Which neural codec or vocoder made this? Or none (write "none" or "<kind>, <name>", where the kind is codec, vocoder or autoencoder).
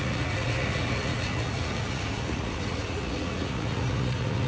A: vocoder, Vocos